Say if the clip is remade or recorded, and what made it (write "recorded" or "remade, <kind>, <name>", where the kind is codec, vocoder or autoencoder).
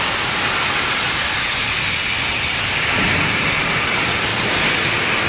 recorded